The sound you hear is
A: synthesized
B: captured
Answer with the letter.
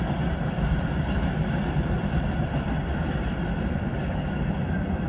A